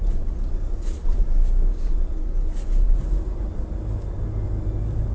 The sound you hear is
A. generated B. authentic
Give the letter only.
B